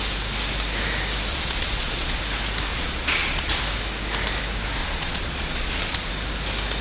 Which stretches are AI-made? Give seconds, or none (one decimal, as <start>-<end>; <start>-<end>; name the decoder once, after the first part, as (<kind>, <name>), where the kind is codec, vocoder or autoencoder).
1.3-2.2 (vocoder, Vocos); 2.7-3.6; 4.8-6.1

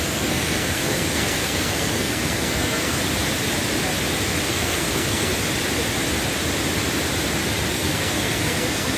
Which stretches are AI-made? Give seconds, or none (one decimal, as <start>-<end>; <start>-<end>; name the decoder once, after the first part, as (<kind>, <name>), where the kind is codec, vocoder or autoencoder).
0.0-3.0 (codec, SNAC); 4.5-5.3; 7.7-9.0

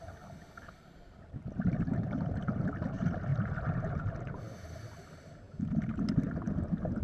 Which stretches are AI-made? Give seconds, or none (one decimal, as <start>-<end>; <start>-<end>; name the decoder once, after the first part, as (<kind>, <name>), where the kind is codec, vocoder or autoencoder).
none

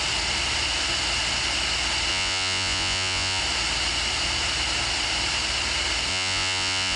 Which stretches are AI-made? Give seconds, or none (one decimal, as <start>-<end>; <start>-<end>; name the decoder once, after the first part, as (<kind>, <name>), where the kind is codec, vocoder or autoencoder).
2.1-3.4 (vocoder, Vocos); 6.1-7.0